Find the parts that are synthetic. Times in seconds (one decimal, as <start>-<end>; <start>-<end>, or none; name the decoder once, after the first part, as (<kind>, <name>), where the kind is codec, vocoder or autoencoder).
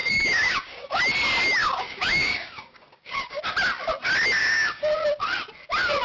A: 0.0-1.0 (codec, DAC); 1.6-3.4; 4.4-4.9